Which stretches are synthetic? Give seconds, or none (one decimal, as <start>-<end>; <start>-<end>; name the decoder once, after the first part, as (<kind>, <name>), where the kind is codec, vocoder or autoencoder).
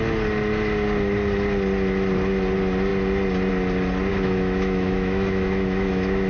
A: 4.1-6.3 (autoencoder, DAC-VAE)